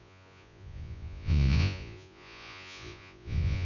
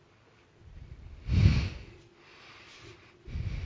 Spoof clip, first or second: first